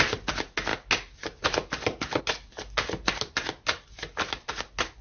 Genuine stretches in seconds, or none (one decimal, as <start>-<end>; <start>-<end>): 0.0-5.0